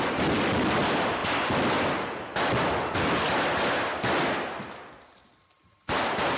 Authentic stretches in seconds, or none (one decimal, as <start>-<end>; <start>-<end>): 0.0-6.4